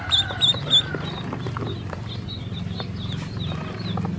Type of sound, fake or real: real